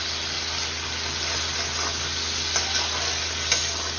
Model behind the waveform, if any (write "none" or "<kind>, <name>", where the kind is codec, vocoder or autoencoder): none